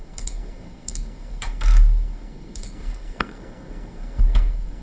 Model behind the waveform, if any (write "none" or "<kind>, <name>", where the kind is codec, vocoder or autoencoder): codec, SNAC